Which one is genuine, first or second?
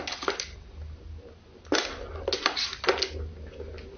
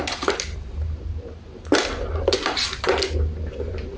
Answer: first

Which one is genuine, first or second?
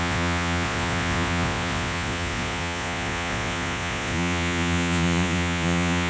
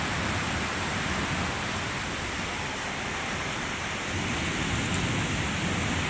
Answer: second